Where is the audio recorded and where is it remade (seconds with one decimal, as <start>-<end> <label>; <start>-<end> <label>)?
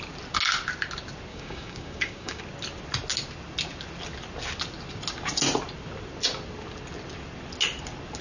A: 0.0-1.3 recorded; 1.3-2.4 remade; 2.4-8.2 recorded